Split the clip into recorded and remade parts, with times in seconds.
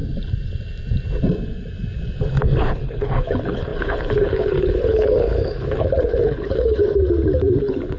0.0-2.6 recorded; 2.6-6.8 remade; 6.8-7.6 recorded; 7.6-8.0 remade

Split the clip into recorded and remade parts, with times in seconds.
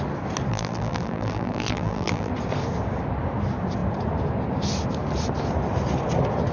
0.0-0.5 recorded; 0.5-2.3 remade; 2.3-6.5 recorded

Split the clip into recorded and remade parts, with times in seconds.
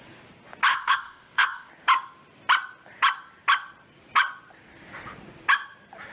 0.0-0.7 recorded; 0.7-1.7 remade; 1.7-6.1 recorded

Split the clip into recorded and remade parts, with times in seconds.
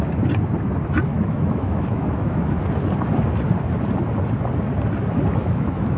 0.0-1.1 recorded; 1.1-2.6 remade; 2.6-5.4 recorded; 5.4-6.0 remade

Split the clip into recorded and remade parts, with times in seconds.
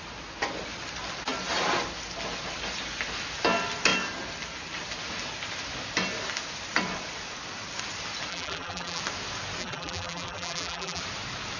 0.0-8.3 recorded; 8.3-9.0 remade; 9.0-9.6 recorded; 9.6-11.0 remade; 11.0-11.6 recorded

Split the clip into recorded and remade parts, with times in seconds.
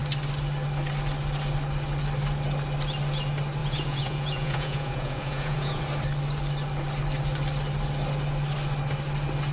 0.0-3.6 recorded; 3.6-5.8 remade; 5.8-9.5 recorded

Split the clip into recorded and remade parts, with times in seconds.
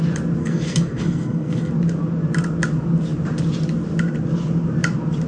0.0-0.4 recorded; 0.4-1.7 remade; 1.7-5.3 recorded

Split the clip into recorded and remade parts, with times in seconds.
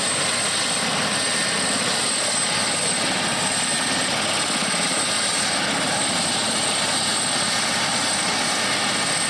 0.0-9.3 recorded